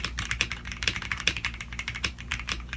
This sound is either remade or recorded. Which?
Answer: remade